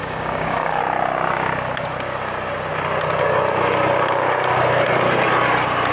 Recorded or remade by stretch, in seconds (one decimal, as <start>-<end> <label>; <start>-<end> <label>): 0.0-0.8 remade; 0.8-5.9 recorded